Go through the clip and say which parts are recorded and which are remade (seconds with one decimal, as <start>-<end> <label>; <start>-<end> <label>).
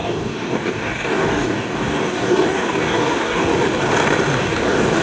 0.0-3.5 remade; 3.5-4.4 recorded; 4.4-5.0 remade